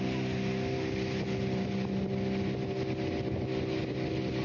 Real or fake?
real